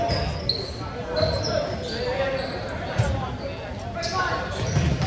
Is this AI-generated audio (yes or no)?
no